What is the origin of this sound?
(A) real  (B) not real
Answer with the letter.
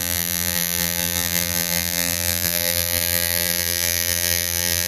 B